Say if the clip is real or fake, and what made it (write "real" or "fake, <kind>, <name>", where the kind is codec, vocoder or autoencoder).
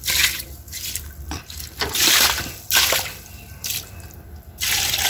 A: fake, vocoder, BigVGAN v2